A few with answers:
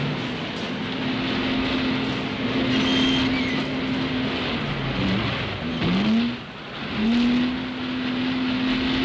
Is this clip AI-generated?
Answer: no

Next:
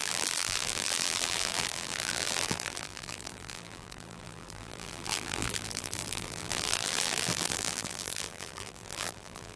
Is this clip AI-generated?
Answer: yes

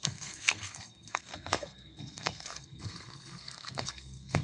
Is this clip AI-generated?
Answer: yes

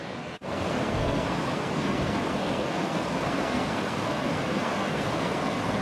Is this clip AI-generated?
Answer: yes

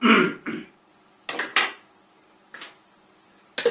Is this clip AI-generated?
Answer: no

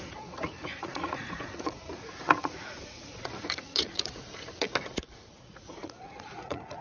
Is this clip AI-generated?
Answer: yes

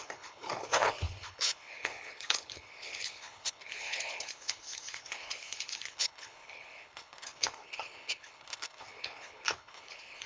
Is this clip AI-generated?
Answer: yes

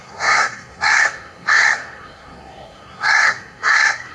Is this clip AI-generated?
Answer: yes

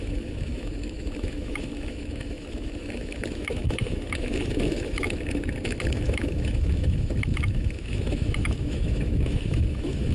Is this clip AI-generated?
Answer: yes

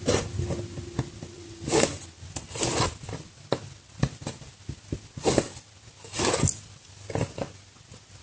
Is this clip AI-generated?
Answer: no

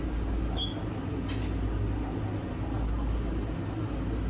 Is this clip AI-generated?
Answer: no